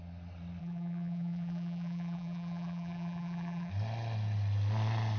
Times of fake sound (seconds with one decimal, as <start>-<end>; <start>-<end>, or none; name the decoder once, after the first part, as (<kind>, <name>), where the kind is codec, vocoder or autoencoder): 0.6-3.7 (vocoder, BigVGAN v2)